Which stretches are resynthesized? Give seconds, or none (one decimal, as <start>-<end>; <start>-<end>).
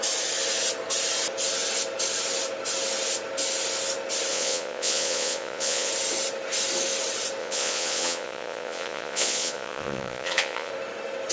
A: 4.3-5.9; 7.4-10.7